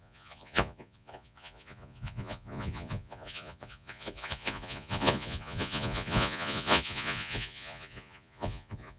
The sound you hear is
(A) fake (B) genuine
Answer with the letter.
A